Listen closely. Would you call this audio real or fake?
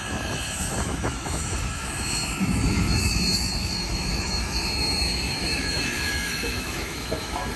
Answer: fake